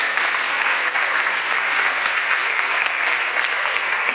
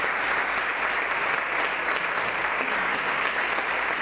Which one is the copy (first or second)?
first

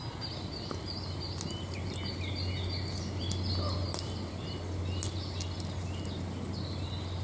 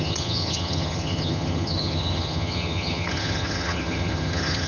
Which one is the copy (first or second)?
second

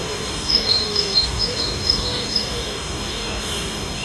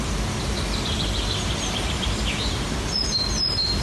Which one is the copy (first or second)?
first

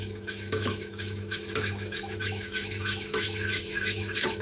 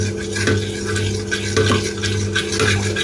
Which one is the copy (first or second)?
first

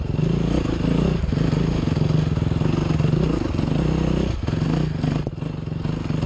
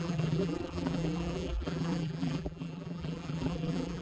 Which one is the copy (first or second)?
second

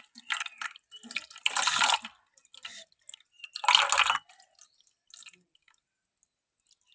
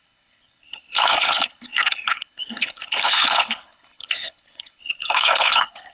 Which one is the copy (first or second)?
second